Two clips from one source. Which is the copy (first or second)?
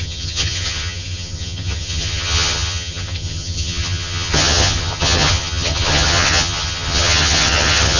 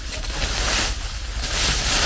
first